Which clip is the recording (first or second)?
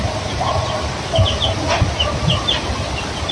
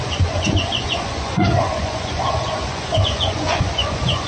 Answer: first